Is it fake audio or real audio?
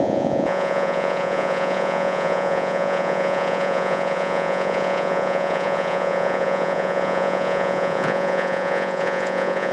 fake